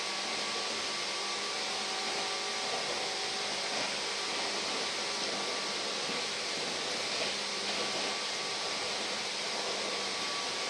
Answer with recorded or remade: recorded